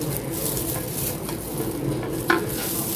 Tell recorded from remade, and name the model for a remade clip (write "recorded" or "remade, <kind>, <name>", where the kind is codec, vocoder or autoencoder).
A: recorded